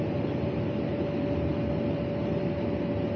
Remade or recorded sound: recorded